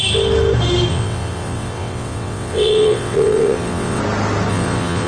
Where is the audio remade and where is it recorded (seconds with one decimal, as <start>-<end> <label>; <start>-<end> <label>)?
0.0-0.9 recorded; 0.9-4.0 remade; 4.0-4.5 recorded; 4.5-5.1 remade